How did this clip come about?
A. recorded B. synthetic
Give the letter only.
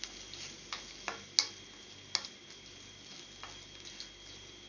A